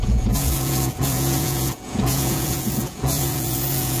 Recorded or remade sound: remade